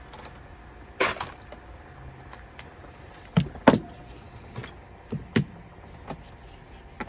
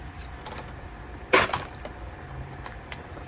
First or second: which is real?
first